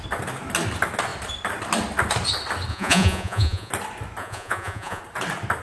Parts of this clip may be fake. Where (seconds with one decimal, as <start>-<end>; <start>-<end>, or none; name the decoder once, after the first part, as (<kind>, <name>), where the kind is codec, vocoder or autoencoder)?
2.7-3.7 (vocoder, Vocos); 4.2-5.0